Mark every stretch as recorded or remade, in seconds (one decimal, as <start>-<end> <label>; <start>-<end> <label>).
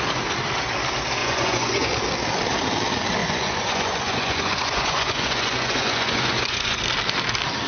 0.0-1.2 recorded; 1.2-1.9 remade; 1.9-3.2 recorded; 3.2-6.8 remade; 6.8-7.7 recorded